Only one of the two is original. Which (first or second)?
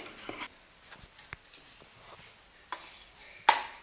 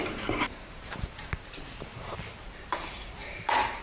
first